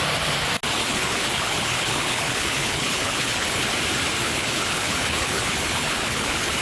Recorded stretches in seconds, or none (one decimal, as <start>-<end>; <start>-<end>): 0.0-0.8; 3.7-4.2